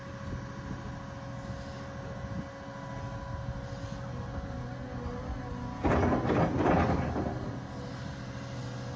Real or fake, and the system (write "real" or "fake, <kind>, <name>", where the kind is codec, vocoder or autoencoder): real